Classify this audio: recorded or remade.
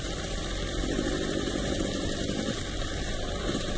recorded